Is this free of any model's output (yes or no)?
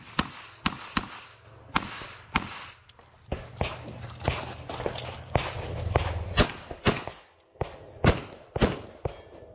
yes